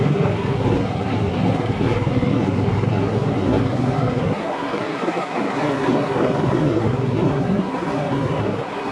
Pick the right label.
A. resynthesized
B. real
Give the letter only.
A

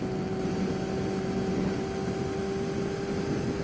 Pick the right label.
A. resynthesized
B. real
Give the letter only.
B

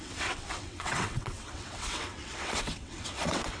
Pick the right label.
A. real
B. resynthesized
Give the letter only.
B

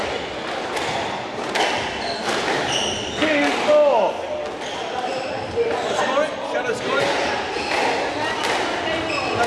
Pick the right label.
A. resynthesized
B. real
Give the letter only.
B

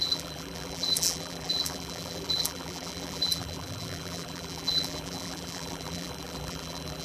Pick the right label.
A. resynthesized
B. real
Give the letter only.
A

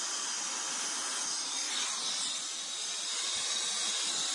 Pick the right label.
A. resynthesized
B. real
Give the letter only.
B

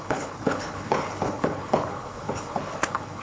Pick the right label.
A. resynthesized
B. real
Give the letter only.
A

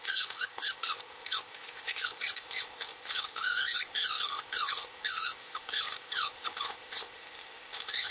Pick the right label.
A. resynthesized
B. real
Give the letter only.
A